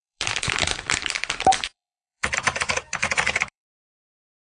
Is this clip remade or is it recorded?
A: remade